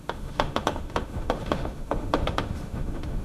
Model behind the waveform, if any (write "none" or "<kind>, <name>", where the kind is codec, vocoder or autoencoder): autoencoder, DAC-VAE